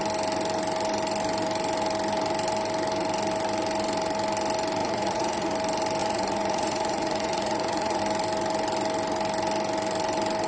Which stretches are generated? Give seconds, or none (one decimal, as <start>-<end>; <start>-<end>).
4.8-5.5; 6.0-8.0